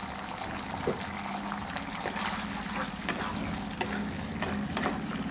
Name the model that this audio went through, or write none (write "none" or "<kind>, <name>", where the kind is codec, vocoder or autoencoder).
none